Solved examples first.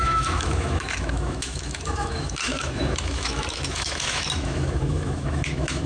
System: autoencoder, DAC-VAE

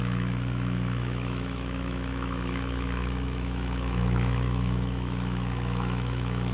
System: autoencoder, DAC-VAE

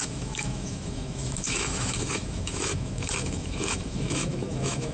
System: autoencoder, DAC-VAE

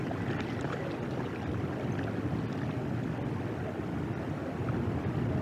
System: none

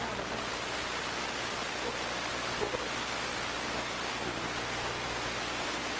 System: none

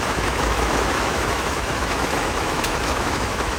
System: autoencoder, DAC-VAE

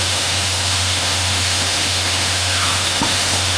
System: autoencoder, DAC-VAE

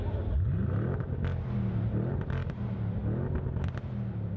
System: none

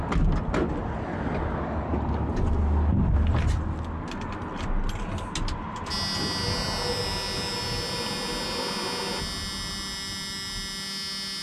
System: none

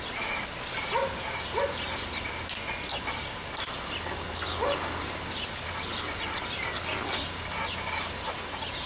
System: none